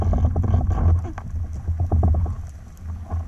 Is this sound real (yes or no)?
yes